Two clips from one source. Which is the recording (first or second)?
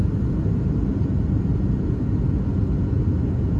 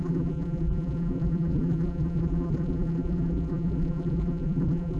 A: first